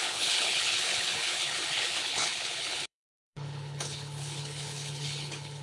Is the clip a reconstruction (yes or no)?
yes